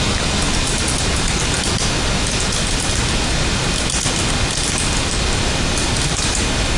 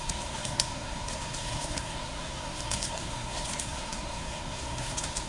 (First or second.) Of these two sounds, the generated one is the second